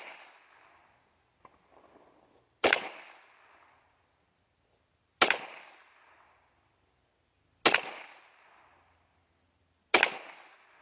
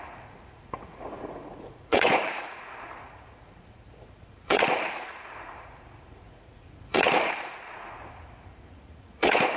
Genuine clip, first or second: first